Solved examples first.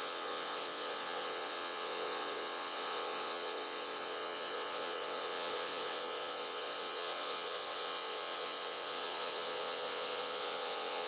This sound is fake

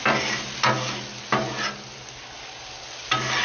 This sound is real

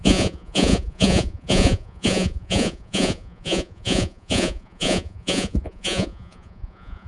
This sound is fake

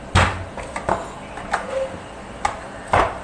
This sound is real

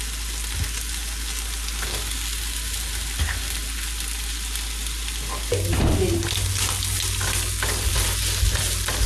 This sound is real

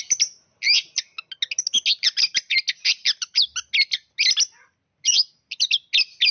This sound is real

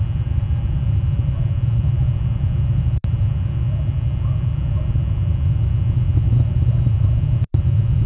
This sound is real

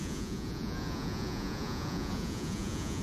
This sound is fake